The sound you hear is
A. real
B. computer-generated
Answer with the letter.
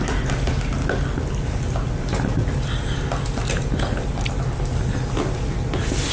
A